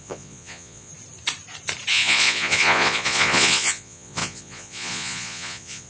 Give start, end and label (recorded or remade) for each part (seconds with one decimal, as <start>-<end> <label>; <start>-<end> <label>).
0.0-0.9 remade; 0.9-1.9 recorded; 1.9-5.9 remade